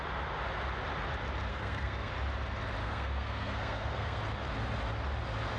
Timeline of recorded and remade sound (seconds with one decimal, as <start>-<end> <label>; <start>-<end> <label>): 0.0-1.5 recorded; 1.5-2.1 remade; 2.1-2.8 recorded; 2.8-4.2 remade; 4.2-5.6 recorded